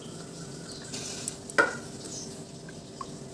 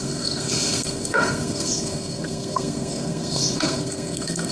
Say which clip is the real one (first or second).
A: first